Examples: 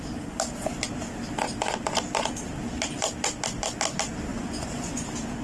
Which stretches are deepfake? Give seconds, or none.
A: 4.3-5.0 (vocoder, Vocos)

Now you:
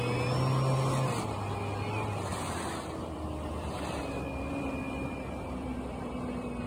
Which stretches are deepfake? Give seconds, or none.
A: 2.3-6.1 (vocoder, BigVGAN v2)

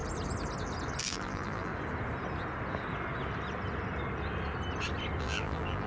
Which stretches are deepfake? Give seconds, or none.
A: 1.0-1.7 (vocoder, BigVGAN v2); 5.2-5.9

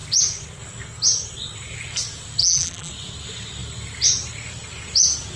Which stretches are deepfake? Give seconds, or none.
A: 2.4-2.9 (vocoder, BigVGAN v2)

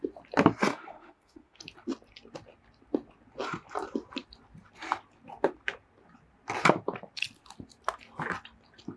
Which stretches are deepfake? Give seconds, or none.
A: 0.7-1.6 (autoencoder, DAC-VAE)

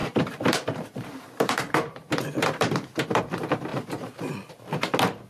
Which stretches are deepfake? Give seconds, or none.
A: 0.0-3.2 (vocoder, BigVGAN v2); 3.7-4.5

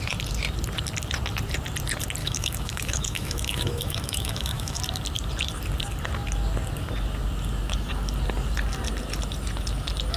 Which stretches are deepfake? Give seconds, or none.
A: 2.2-4.8 (autoencoder, DAC-VAE)